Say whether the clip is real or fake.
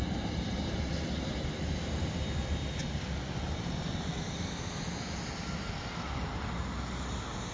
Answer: real